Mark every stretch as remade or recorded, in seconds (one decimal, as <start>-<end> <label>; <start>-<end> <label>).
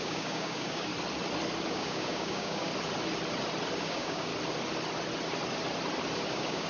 0.0-0.9 remade; 0.9-1.7 recorded; 1.7-2.7 remade; 2.7-3.8 recorded; 3.8-4.3 remade; 4.3-6.3 recorded; 6.3-6.7 remade